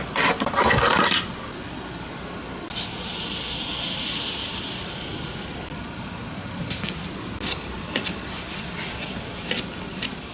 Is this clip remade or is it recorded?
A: recorded